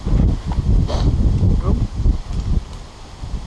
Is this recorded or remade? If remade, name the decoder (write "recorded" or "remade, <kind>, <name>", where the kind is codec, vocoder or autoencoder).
recorded